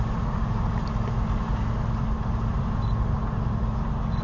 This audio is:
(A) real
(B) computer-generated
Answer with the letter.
A